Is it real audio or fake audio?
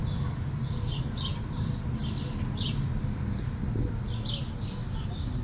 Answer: real